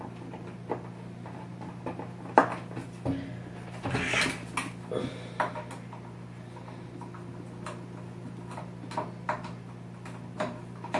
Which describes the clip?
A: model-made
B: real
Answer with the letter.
B